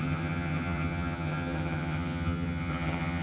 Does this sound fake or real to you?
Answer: fake